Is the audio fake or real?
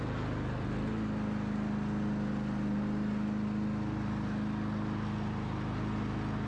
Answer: real